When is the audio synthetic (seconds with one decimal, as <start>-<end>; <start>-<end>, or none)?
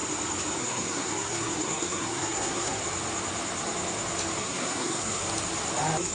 0.6-2.8; 4.4-5.2